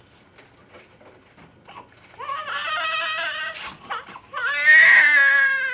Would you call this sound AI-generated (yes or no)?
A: no